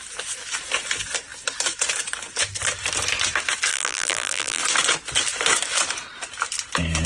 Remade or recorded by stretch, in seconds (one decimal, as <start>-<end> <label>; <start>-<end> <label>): 0.0-3.7 recorded; 3.7-4.6 remade; 4.6-7.1 recorded